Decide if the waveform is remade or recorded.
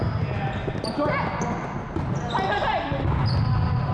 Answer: recorded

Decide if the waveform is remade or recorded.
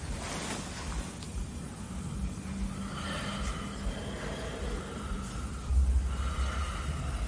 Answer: recorded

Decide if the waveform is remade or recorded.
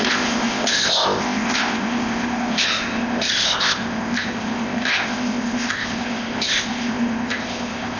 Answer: remade